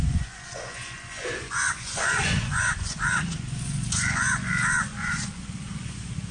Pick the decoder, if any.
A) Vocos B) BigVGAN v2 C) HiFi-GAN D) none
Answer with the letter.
A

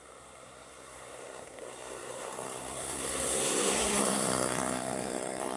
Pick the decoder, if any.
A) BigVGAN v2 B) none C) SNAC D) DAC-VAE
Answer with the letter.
C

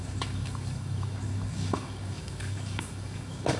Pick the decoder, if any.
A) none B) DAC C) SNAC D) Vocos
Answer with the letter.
B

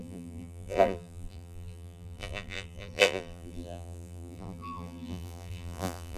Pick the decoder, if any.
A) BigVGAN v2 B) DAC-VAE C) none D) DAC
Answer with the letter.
A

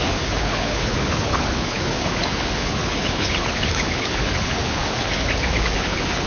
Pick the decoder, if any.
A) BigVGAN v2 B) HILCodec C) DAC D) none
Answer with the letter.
B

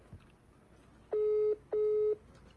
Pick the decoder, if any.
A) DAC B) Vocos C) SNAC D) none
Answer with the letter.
D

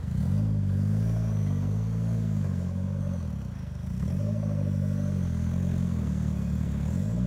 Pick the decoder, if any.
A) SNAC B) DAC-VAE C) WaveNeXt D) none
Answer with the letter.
A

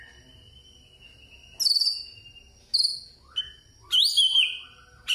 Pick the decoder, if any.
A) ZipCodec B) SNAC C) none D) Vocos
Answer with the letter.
C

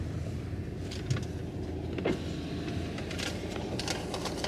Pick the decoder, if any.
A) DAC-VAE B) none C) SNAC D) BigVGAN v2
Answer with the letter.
B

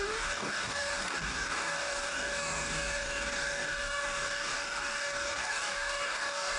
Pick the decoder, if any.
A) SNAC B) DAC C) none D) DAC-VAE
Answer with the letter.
B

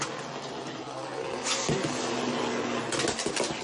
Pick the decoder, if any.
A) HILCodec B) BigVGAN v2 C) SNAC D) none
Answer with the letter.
D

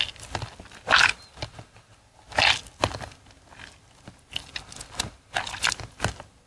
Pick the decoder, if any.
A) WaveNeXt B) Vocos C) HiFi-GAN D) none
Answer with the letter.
D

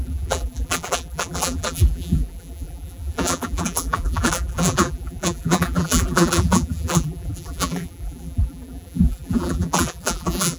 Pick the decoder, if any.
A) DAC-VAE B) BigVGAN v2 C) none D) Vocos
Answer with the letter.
B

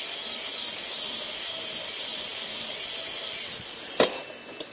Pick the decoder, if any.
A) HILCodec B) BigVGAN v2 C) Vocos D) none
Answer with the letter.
D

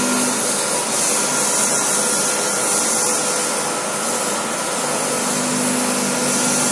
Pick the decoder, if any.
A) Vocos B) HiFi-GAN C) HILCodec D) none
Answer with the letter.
D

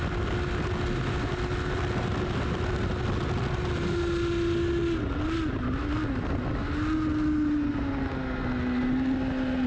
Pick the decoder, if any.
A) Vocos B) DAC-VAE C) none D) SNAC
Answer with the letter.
C